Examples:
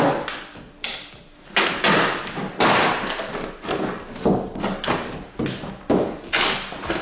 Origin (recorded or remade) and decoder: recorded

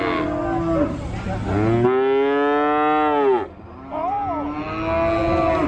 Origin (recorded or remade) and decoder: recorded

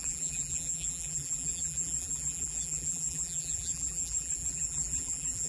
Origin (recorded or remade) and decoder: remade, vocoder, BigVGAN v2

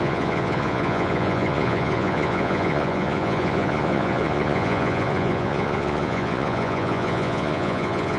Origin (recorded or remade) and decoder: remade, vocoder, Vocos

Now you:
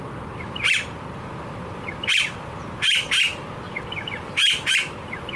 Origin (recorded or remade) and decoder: remade, vocoder, BigVGAN v2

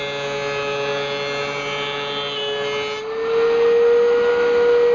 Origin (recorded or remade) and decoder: recorded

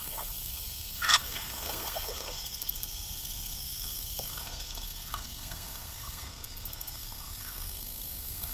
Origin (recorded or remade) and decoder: remade, codec, SNAC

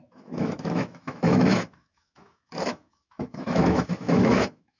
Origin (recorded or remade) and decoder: remade, autoencoder, DAC-VAE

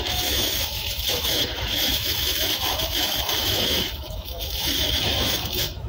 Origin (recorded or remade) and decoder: remade, autoencoder, DAC-VAE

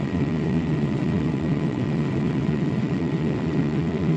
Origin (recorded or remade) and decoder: remade, vocoder, WaveNeXt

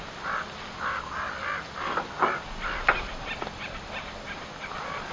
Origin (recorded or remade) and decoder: recorded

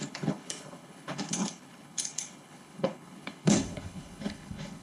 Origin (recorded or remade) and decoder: remade, codec, HILCodec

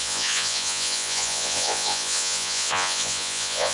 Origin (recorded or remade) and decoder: remade, vocoder, Vocos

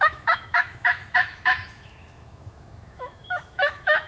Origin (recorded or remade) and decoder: remade, autoencoder, DAC-VAE